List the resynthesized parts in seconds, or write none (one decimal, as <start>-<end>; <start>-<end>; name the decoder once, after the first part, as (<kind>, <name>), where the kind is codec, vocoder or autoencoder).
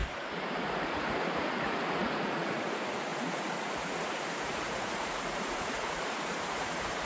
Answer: 0.6-7.1 (vocoder, Vocos)